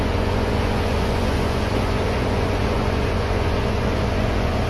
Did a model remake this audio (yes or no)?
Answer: yes